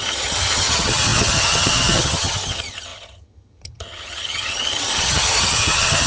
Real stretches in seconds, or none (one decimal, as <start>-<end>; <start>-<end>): none